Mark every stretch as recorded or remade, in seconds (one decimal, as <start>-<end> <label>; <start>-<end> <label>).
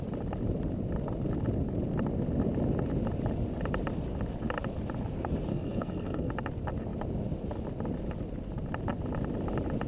0.0-5.5 recorded; 5.5-6.3 remade; 6.3-9.9 recorded